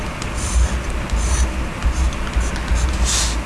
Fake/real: real